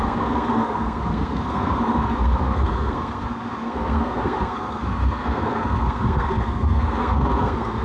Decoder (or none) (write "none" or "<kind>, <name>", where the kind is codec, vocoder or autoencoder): codec, SNAC